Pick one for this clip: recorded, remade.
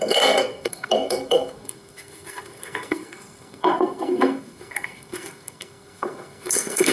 remade